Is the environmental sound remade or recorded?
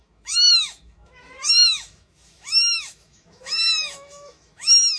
remade